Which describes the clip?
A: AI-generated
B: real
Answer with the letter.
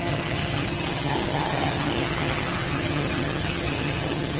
A